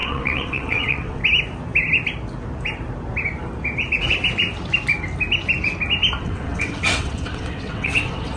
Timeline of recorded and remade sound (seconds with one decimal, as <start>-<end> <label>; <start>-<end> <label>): 0.0-1.2 remade; 1.2-6.2 recorded; 6.2-8.4 remade